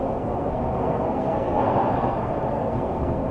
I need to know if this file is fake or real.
fake